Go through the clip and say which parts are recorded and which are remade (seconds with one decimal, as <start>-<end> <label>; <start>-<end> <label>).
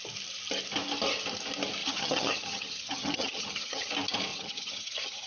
0.0-1.8 recorded; 1.8-3.9 remade; 3.9-4.3 recorded; 4.3-5.3 remade